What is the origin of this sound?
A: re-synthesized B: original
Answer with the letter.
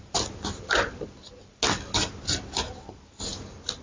B